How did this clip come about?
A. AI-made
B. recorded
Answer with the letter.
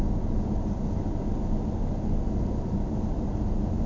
B